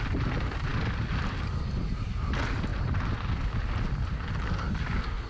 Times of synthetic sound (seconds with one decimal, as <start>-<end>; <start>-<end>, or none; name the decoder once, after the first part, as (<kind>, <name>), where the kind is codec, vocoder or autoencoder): none